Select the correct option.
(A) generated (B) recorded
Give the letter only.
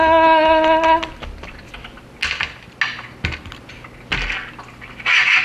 B